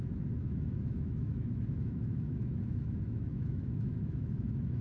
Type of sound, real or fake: fake